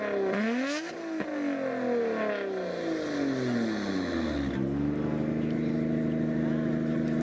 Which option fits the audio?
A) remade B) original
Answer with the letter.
B